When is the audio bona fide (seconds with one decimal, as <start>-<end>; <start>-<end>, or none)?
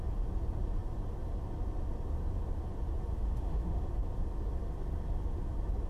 0.0-3.1; 3.9-5.9